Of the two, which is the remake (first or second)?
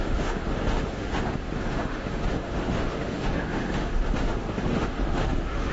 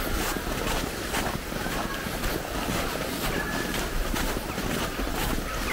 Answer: first